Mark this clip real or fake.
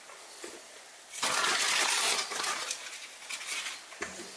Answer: real